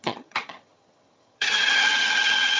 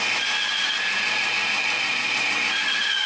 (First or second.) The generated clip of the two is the first